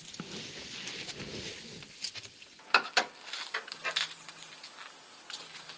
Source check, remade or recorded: recorded